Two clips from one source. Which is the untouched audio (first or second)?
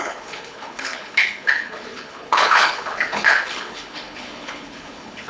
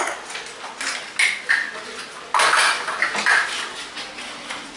second